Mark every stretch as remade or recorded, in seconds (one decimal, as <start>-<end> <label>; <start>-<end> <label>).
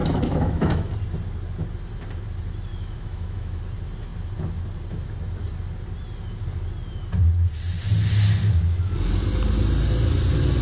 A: 0.0-0.9 remade; 0.9-2.7 recorded; 2.7-3.6 remade; 3.6-10.6 recorded